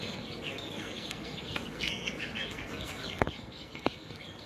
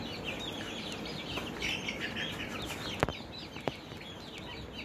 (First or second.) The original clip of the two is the second